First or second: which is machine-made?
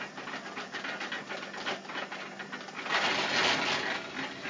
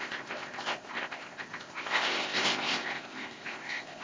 second